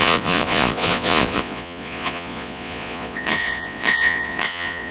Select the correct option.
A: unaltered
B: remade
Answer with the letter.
B